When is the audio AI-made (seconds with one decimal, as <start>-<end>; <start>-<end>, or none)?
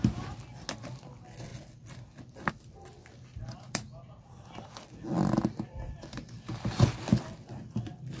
none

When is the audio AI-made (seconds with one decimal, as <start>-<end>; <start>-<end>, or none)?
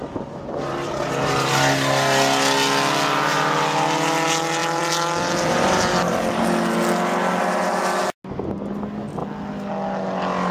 4.6-6.4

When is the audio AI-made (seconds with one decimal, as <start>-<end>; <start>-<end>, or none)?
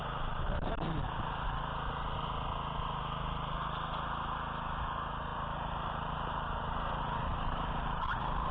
0.0-0.7; 5.3-6.8; 7.3-8.5